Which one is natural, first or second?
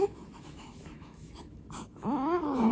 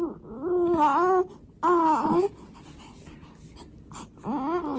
second